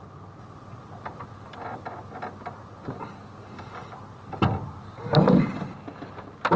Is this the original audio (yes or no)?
yes